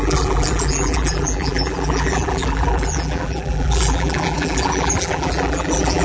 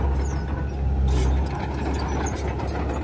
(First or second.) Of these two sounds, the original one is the second